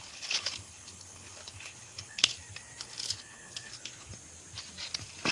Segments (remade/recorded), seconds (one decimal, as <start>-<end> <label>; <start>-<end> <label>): 0.0-2.3 remade; 2.3-2.8 recorded; 2.8-4.1 remade; 4.1-5.3 recorded